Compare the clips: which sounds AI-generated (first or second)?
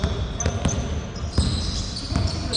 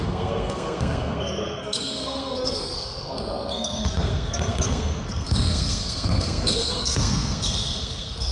second